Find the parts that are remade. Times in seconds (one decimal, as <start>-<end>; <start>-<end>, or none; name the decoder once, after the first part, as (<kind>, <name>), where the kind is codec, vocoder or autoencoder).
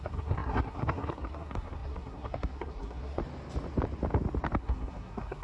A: 0.0-3.2 (codec, SNAC); 4.6-5.4